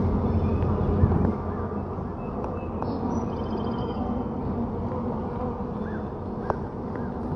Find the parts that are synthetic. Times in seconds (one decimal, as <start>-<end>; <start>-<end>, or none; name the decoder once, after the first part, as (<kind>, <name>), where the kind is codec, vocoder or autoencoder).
3.8-4.4 (codec, SNAC)